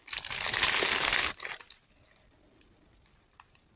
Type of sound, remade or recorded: recorded